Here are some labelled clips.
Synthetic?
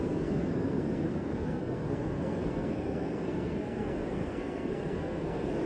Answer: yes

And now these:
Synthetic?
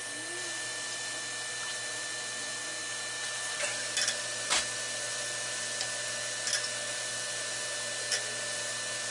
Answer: no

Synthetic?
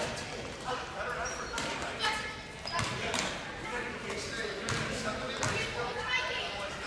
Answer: yes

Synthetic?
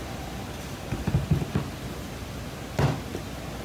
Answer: no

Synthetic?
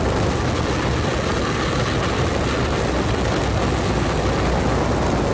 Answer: no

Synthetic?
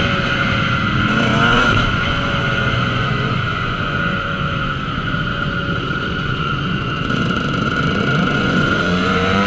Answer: yes